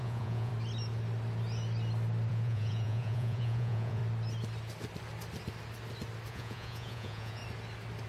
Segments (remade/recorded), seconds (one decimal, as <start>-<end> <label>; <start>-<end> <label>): 0.0-0.5 remade; 0.5-2.3 recorded; 2.3-4.0 remade; 4.0-6.3 recorded; 6.3-7.4 remade; 7.4-8.1 recorded